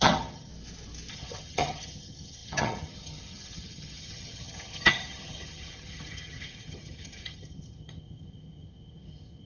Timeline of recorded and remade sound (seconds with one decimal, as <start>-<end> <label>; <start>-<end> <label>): 0.0-0.5 remade; 0.5-1.1 recorded; 1.1-9.4 remade